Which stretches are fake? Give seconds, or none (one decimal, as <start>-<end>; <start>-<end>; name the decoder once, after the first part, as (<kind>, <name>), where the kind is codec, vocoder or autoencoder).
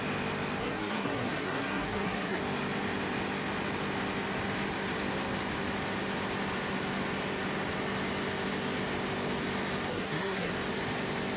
0.6-2.4 (codec, SNAC); 9.9-10.5